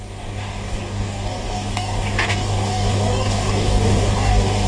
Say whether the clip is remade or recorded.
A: remade